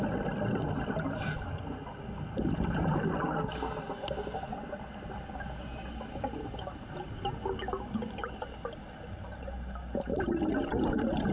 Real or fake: real